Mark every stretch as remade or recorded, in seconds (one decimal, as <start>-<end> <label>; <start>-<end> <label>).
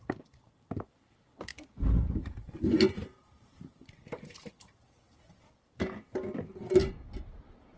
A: 0.0-1.5 recorded; 1.5-2.4 remade; 2.4-3.1 recorded; 3.1-4.5 remade; 4.5-7.8 recorded